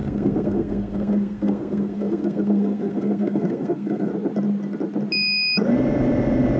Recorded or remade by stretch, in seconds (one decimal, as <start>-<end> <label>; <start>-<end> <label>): 0.0-4.1 remade; 4.1-6.6 recorded